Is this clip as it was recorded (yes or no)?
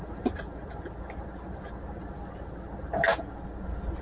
yes